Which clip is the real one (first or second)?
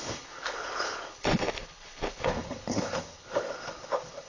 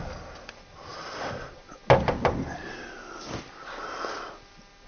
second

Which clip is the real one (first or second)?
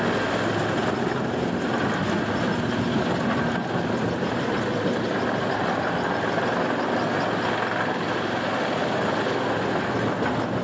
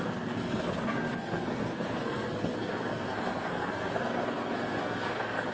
first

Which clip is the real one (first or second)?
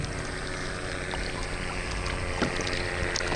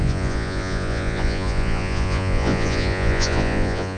first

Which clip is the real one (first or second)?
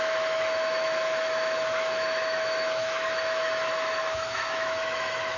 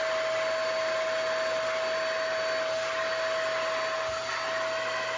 second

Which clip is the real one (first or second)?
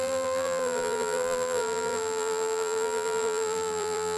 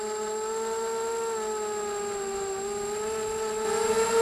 second